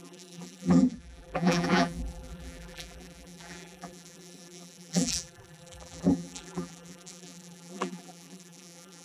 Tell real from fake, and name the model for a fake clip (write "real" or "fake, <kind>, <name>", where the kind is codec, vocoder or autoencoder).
fake, vocoder, BigVGAN v2